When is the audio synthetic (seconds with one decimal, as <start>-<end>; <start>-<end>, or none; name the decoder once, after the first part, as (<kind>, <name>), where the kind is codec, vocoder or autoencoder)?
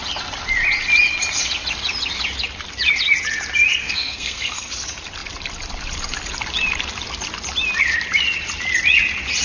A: 3.8-4.7 (codec, SNAC)